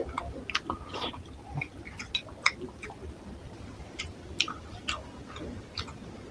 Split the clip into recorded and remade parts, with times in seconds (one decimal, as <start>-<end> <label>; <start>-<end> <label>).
0.0-6.3 recorded